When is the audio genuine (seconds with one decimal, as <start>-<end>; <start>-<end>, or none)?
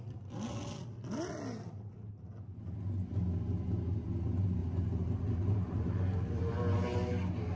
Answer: 0.0-4.6; 6.5-7.6